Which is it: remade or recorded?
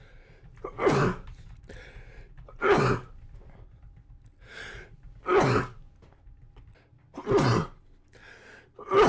recorded